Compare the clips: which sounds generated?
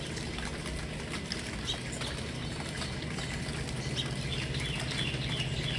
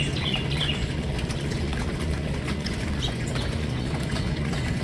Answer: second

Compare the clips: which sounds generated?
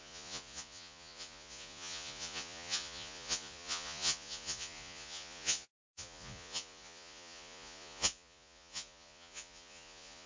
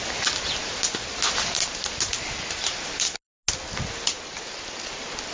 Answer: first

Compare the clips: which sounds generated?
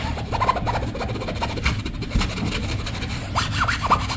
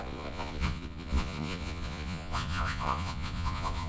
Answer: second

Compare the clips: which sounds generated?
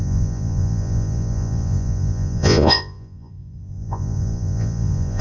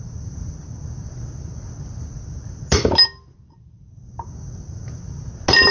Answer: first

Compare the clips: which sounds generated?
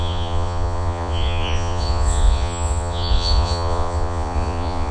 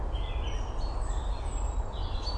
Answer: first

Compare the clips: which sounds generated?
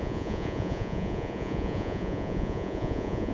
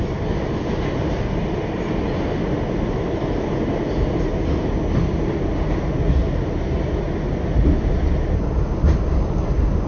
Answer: first